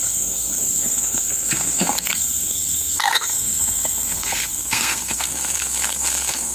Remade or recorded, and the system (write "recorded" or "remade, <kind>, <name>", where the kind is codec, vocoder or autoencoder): remade, codec, SNAC